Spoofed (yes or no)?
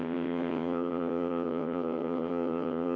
yes